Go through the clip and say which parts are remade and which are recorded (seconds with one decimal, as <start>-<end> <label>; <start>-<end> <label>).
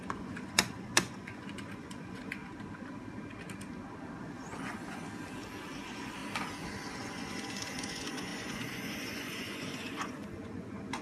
0.0-2.4 remade; 2.4-4.2 recorded; 4.2-5.0 remade; 5.0-5.7 recorded; 5.7-6.2 remade; 6.2-6.9 recorded; 6.9-11.0 remade